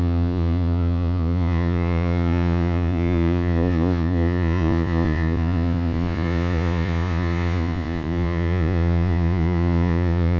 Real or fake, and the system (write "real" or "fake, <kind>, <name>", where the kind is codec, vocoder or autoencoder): fake, vocoder, Vocos